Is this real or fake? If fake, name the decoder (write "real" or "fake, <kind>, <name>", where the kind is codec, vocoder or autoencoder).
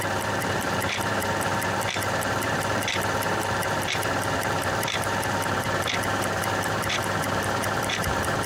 fake, vocoder, BigVGAN v2